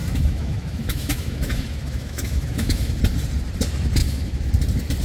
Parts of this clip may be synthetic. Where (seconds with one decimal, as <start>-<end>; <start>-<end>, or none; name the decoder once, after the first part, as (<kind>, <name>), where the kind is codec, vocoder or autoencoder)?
0.0-3.0 (autoencoder, DAC-VAE); 4.0-4.5